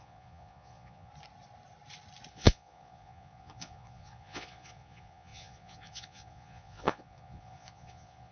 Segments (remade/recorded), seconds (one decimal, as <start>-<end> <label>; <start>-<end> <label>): 0.0-1.1 remade; 1.1-2.3 recorded; 2.3-8.3 remade